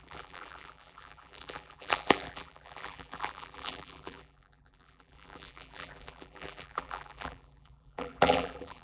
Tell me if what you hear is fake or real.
fake